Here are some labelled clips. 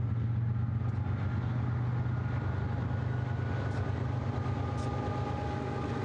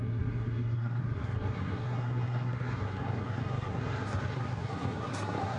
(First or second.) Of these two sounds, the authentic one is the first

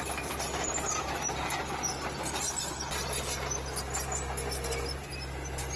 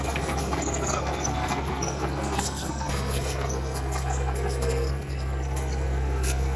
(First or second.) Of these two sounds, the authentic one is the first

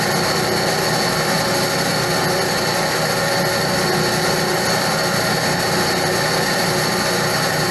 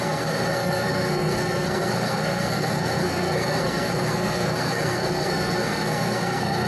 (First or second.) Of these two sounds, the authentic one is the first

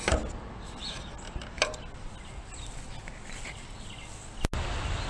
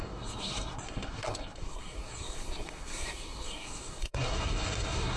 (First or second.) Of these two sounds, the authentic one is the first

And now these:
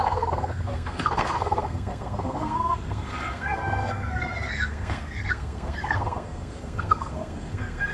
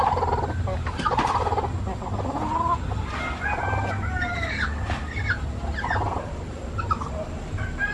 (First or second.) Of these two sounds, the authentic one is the second